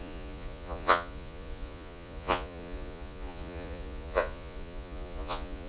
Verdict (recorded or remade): remade